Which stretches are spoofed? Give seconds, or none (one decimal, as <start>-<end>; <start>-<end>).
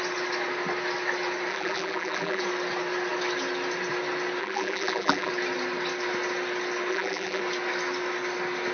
1.5-2.4; 4.4-5.3; 6.9-7.4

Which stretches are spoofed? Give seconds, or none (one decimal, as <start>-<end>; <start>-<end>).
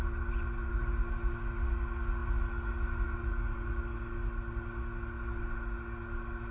none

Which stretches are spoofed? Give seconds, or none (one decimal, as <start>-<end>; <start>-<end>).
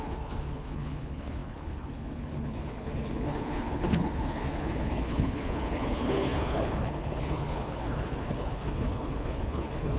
0.0-10.0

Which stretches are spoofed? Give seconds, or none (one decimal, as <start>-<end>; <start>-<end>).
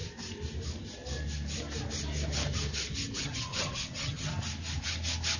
3.2-4.3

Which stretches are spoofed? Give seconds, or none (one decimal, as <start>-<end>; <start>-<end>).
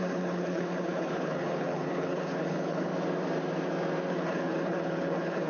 0.0-2.9; 4.1-5.5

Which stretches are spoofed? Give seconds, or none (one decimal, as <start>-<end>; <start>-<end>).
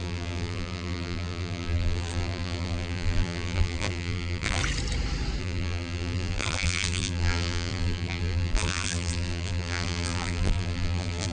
0.0-4.6; 5.4-11.3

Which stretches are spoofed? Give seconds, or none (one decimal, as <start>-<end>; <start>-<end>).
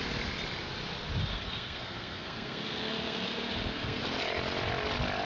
1.3-4.0